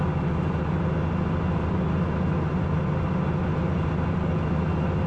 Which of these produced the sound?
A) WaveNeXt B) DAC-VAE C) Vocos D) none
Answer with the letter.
D